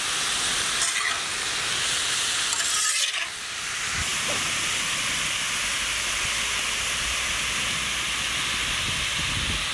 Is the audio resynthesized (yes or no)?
no